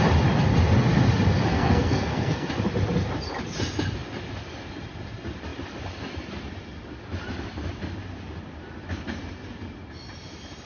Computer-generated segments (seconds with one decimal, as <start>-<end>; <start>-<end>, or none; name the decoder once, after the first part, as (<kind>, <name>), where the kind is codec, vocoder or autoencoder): 1.5-2.5 (codec, SNAC)